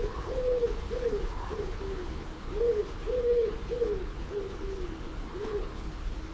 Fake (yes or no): yes